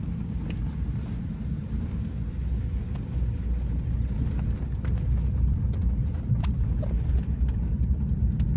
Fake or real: real